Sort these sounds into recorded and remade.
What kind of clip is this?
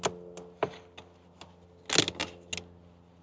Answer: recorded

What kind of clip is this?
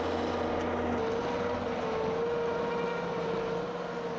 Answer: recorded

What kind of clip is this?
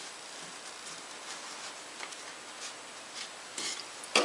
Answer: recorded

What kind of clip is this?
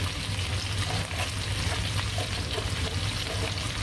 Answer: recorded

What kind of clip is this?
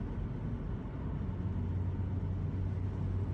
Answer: recorded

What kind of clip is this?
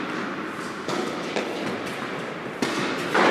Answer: recorded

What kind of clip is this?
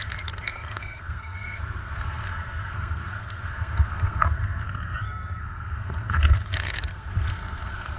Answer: remade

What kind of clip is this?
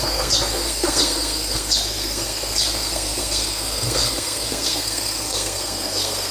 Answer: remade